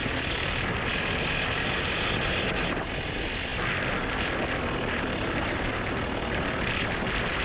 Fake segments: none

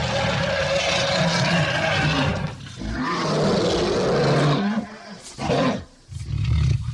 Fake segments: none

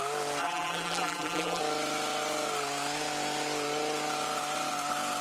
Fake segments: 0.4-1.6 (vocoder, BigVGAN v2)

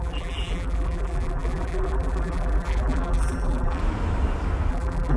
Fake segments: 0.0-3.8 (vocoder, BigVGAN v2); 4.7-5.2